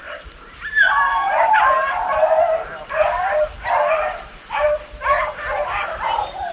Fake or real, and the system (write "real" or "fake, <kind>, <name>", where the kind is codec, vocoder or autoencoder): real